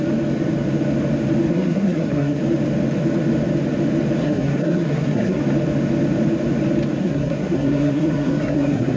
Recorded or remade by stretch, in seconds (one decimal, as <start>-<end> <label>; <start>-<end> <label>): 0.0-1.5 recorded; 1.5-2.4 remade; 2.4-4.2 recorded; 4.2-5.4 remade; 5.4-7.0 recorded; 7.0-9.0 remade